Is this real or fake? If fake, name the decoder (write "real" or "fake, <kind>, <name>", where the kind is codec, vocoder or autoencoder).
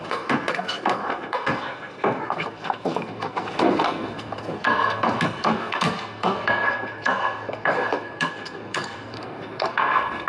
fake, codec, SNAC